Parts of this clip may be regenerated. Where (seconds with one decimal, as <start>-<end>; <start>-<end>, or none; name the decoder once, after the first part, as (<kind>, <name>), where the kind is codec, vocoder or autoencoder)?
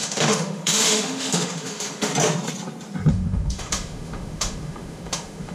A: 0.0-2.1 (autoencoder, DAC-VAE); 3.1-5.5